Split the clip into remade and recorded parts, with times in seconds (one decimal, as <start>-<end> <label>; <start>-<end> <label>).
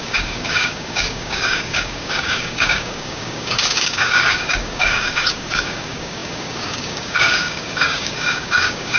0.0-9.0 remade